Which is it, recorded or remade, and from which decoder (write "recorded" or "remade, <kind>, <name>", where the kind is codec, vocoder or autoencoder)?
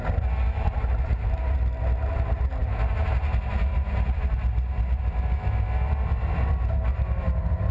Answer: recorded